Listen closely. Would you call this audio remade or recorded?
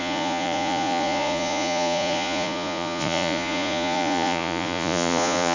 remade